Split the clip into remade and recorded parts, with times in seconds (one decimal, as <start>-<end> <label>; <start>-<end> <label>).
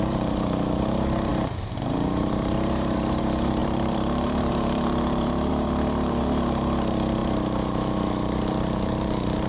0.0-9.5 remade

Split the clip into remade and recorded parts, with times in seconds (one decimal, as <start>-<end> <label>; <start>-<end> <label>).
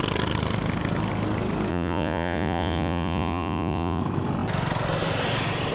0.0-1.7 recorded; 1.7-4.0 remade; 4.0-5.7 recorded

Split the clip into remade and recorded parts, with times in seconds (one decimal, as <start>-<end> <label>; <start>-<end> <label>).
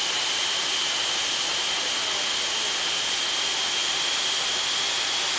0.0-5.4 recorded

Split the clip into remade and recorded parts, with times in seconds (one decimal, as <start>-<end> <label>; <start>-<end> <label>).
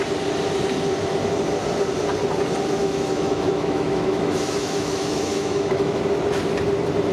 0.0-2.8 recorded; 2.8-6.0 remade; 6.0-7.1 recorded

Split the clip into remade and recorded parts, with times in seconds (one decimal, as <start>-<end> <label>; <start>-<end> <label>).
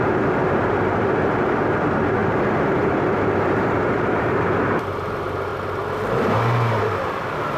0.0-5.5 remade; 5.5-6.8 recorded; 6.8-7.6 remade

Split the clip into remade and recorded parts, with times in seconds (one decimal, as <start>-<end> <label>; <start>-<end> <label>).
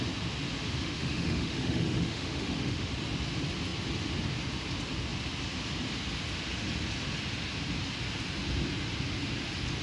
0.0-0.8 recorded; 0.8-2.9 remade; 2.9-9.8 recorded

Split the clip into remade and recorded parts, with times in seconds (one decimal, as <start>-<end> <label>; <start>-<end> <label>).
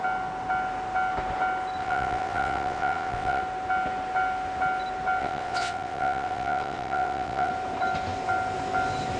0.0-1.8 recorded; 1.8-3.4 remade; 3.4-5.2 recorded; 5.2-7.5 remade; 7.5-9.2 recorded